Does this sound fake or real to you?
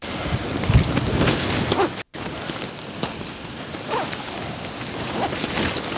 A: real